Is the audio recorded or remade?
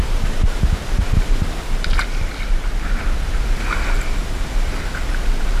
recorded